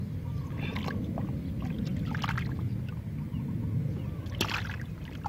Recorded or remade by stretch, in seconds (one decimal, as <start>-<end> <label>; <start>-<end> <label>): 0.0-5.3 recorded